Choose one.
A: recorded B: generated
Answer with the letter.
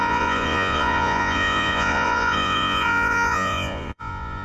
B